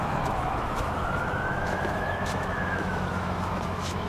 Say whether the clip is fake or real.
fake